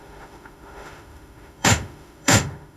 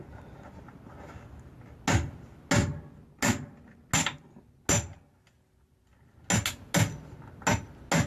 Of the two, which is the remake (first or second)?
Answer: first